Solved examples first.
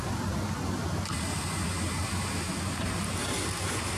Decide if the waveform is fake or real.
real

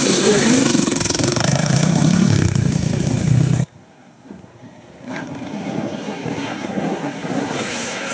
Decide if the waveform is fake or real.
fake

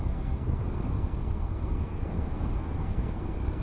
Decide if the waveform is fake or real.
fake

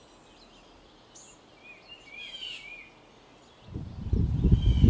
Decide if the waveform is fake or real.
real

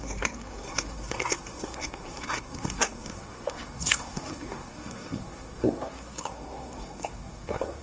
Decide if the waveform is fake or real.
fake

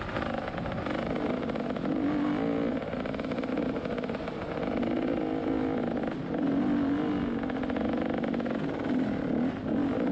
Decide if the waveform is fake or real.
real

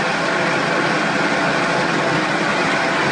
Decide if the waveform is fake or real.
real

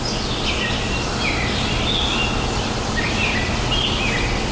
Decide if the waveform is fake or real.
real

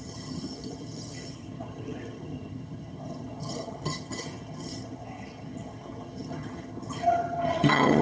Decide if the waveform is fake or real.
fake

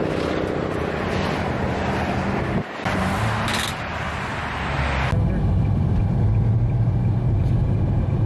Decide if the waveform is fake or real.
real